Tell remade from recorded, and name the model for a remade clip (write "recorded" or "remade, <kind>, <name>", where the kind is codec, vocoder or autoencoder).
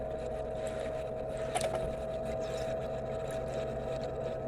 recorded